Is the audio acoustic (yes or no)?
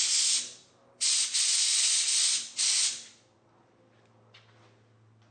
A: yes